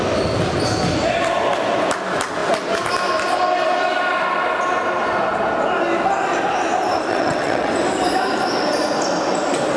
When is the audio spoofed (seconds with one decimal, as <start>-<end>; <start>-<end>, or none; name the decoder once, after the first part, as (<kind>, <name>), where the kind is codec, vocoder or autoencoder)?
7.1-7.7 (vocoder, WaveNeXt)